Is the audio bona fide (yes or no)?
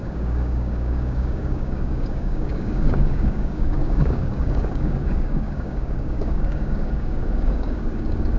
no